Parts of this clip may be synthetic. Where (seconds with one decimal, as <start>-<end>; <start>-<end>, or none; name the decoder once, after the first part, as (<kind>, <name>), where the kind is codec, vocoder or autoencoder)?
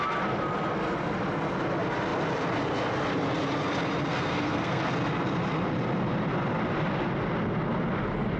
4.1-4.8 (codec, SNAC)